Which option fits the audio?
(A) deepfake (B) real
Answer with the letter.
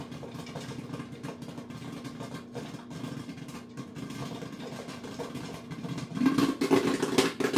B